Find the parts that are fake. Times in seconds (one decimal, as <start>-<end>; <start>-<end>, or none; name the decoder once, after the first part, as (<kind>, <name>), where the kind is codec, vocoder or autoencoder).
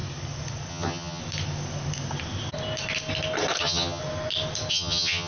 0.7-1.2 (vocoder, HiFi-GAN); 3.6-4.0; 4.7-5.3